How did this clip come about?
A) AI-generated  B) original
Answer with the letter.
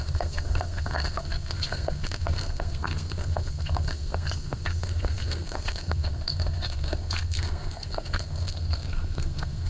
A